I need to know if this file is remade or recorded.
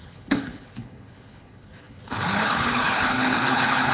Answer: remade